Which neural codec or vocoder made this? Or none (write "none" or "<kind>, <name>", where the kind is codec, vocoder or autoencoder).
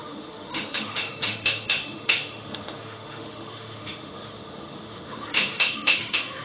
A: autoencoder, DAC-VAE